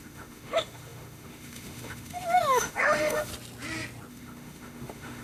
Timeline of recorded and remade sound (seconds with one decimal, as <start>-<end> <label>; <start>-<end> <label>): 0.0-3.3 remade; 3.3-4.1 recorded; 4.1-5.2 remade